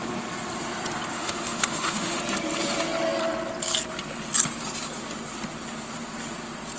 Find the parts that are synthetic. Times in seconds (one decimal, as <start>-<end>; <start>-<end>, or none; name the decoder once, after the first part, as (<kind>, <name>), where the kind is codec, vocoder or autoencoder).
1.1-2.2 (autoencoder, DAC-VAE)